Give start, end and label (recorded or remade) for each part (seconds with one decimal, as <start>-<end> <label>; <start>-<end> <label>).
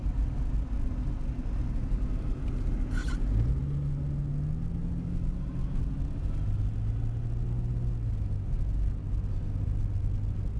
0.0-0.7 remade; 0.7-10.6 recorded